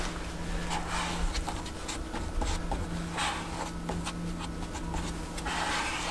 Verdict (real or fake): real